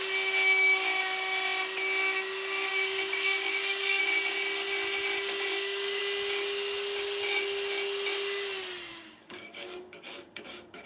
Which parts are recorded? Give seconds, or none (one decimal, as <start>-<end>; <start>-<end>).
0.0-2.7; 4.0-5.5; 6.0-8.9